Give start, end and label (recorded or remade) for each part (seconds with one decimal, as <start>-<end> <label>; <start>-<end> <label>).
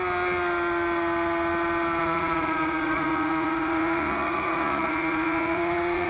0.0-2.0 recorded; 2.0-6.1 remade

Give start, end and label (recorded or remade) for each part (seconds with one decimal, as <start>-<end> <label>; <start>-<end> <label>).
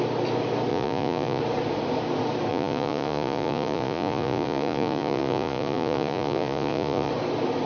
0.0-0.7 recorded; 0.7-1.4 remade; 1.4-2.5 recorded; 2.5-7.1 remade; 7.1-7.7 recorded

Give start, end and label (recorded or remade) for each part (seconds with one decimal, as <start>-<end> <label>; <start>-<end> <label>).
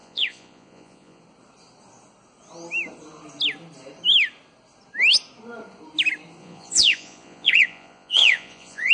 0.0-1.2 remade; 1.2-6.4 recorded; 6.4-8.9 remade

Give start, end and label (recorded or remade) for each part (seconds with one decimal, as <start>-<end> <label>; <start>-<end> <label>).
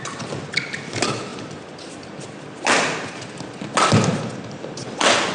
0.0-5.3 recorded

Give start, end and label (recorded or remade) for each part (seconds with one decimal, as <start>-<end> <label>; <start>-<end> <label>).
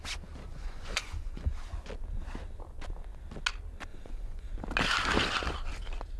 0.0-0.5 recorded; 0.5-1.5 remade; 1.5-3.9 recorded; 3.9-4.5 remade; 4.5-6.2 recorded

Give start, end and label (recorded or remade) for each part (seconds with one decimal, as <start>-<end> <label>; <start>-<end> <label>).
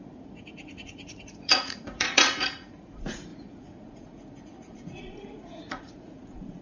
0.0-6.6 remade